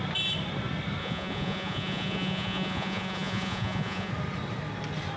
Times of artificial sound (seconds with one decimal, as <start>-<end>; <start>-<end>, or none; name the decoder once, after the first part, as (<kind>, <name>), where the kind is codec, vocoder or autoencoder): 1.0-4.1 (vocoder, Vocos)